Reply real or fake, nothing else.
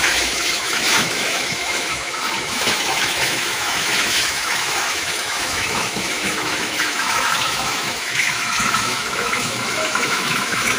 fake